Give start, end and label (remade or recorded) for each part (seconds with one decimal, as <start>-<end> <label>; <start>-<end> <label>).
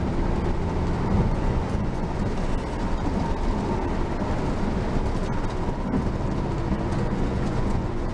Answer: 0.0-1.2 recorded; 1.2-2.2 remade; 2.2-6.7 recorded; 6.7-8.1 remade